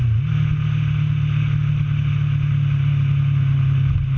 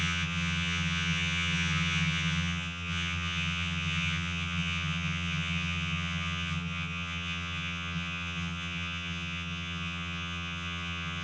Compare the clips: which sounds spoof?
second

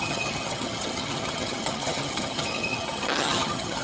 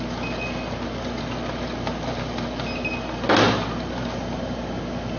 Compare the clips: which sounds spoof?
first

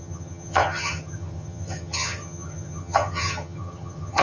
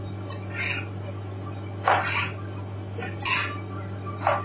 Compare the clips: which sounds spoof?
first